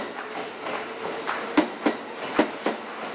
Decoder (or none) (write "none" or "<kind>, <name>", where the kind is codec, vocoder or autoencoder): none